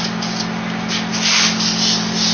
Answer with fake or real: real